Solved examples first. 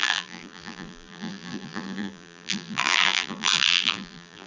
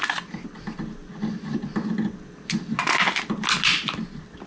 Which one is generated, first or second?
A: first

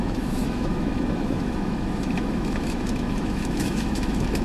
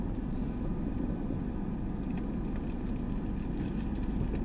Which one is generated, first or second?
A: first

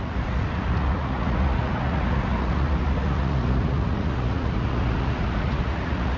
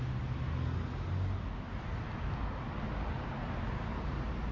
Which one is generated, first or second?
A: first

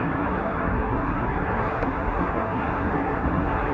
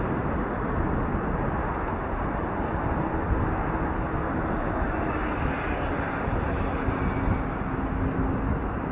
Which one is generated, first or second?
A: first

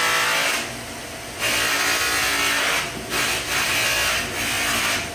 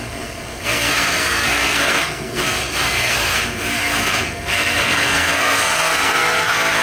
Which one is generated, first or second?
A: second